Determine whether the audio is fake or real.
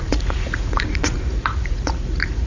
fake